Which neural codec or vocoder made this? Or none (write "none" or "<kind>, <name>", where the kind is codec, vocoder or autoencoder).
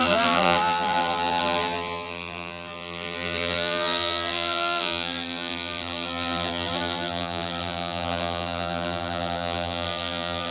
vocoder, BigVGAN v2